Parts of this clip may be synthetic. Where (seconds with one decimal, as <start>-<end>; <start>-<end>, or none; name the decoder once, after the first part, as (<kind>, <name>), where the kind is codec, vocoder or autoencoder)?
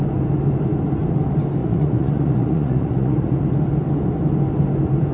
1.6-3.3 (vocoder, Vocos)